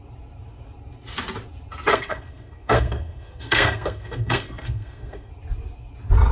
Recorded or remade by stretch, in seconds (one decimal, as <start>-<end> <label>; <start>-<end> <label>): 0.0-1.9 recorded; 1.9-5.3 remade; 5.3-6.3 recorded